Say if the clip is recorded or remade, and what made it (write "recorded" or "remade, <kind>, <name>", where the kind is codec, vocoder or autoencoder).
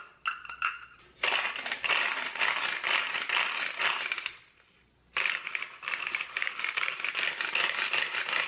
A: recorded